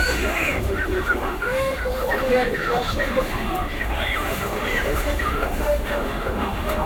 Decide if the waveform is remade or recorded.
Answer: remade